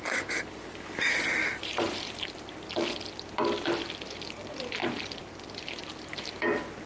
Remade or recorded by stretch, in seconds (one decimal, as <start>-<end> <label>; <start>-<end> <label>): 0.0-1.4 recorded; 1.4-2.5 remade; 2.5-6.9 recorded